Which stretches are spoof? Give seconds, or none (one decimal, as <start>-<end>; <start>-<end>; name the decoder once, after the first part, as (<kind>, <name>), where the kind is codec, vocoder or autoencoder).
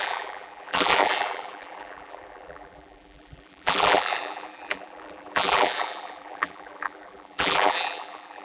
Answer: 0.0-8.4 (vocoder, BigVGAN v2)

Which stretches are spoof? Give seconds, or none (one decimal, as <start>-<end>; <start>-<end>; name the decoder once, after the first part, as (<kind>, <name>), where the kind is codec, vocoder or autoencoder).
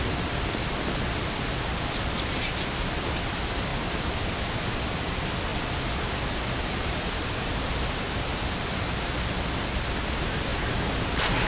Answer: 5.5-8.9 (vocoder, BigVGAN v2)